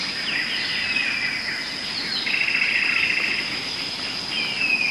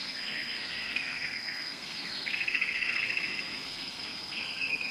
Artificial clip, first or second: second